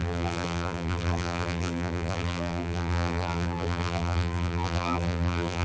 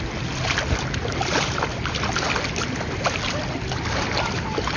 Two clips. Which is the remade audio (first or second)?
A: first